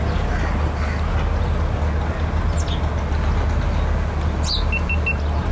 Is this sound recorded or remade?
recorded